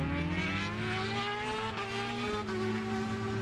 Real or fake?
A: real